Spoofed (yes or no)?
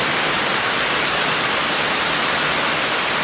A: no